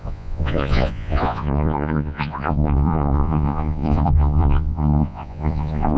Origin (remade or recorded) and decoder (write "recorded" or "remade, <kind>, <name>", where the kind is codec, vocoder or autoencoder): remade, vocoder, Vocos